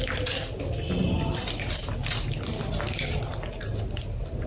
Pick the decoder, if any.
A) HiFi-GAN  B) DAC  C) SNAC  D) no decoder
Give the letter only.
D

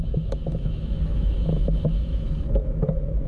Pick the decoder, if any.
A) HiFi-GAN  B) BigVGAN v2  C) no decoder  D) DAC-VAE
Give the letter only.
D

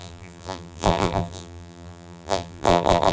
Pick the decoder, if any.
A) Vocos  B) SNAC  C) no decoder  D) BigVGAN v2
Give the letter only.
D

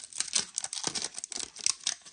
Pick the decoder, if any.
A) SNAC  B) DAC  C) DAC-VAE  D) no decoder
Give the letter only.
D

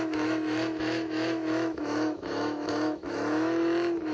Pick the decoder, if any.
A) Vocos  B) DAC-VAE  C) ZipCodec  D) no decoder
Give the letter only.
B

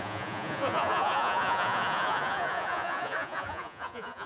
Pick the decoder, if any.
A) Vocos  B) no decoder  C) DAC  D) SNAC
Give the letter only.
A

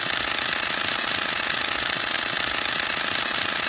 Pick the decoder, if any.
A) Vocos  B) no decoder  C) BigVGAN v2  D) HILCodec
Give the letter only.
B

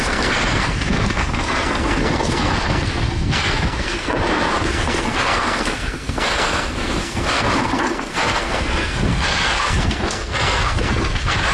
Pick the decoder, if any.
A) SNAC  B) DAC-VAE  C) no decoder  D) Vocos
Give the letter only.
A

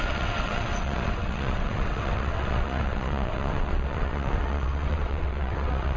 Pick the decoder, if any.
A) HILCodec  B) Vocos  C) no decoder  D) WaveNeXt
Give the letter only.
D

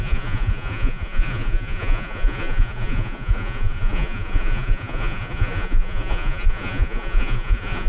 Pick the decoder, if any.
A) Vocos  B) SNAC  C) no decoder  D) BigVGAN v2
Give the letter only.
A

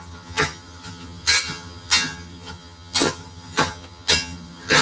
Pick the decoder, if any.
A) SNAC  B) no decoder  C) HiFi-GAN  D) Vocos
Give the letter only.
C